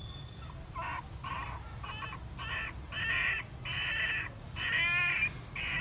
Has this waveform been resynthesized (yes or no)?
no